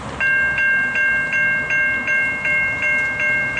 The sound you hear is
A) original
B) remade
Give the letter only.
A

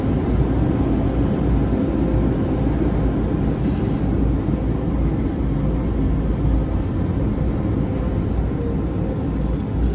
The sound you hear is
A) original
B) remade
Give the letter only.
A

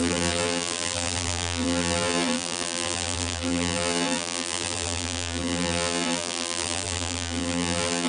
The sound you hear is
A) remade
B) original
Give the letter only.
A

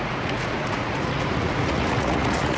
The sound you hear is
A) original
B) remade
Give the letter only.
B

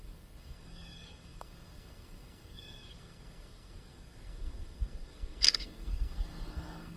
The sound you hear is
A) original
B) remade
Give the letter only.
B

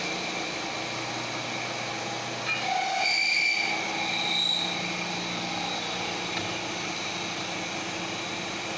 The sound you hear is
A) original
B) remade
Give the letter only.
A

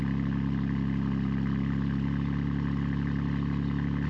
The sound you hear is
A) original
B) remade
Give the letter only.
A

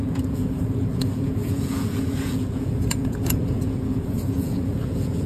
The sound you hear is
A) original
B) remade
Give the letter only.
B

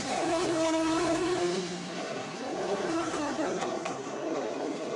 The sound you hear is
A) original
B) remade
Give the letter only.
B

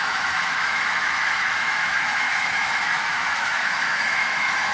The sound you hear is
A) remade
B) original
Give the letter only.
A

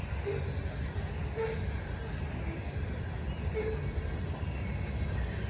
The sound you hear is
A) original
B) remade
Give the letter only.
A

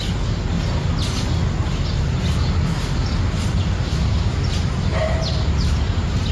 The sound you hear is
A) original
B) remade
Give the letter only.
A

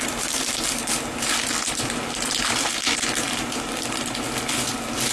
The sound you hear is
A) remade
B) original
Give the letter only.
B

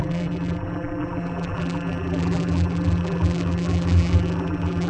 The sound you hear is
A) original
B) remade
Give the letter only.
B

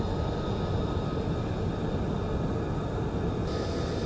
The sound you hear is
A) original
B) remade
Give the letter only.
A